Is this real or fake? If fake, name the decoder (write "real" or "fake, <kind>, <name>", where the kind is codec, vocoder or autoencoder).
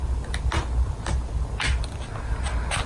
real